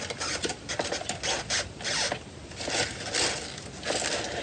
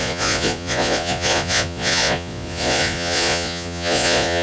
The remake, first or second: second